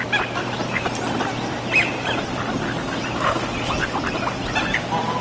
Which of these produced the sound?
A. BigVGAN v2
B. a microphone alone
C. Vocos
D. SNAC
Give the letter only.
B